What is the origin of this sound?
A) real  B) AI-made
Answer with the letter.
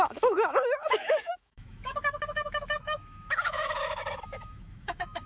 B